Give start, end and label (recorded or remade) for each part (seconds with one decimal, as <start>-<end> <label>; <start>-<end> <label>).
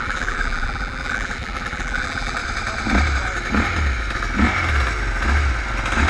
0.0-2.4 remade; 2.4-6.1 recorded